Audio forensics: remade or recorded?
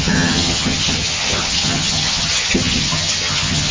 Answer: remade